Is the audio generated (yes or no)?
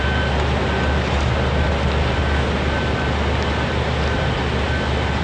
no